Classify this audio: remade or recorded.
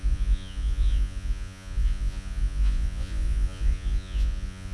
remade